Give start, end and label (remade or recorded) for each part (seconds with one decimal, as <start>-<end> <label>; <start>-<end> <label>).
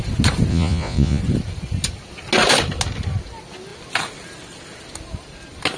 0.0-0.5 recorded; 0.5-1.2 remade; 1.2-5.8 recorded